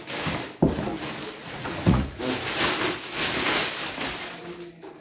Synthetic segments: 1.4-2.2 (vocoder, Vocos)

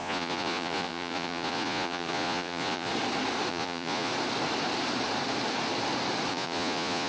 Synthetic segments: 0.0-2.9 (vocoder, Vocos); 3.5-4.1; 6.3-7.1

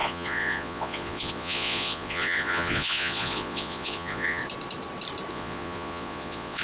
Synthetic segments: 0.0-4.4 (vocoder, Vocos); 5.3-6.6

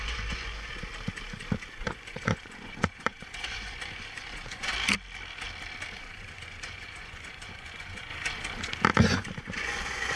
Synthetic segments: 0.0-0.9 (vocoder, Vocos); 1.7-4.7; 5.9-8.1; 9.0-10.2

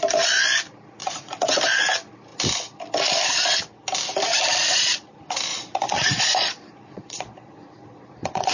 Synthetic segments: 1.0-1.6 (vocoder, Vocos); 5.5-8.5

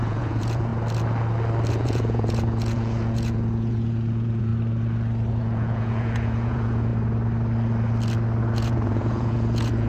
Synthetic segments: 0.0-0.7 (vocoder, Vocos); 1.7-4.5; 5.3-6.9; 8.4-9.9

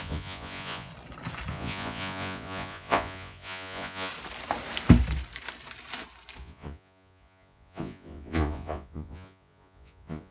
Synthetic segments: 0.0-0.9 (vocoder, Vocos); 1.5-4.1; 6.4-10.3